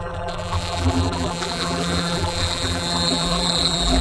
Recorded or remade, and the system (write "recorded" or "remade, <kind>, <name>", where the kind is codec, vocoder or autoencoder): remade, vocoder, BigVGAN v2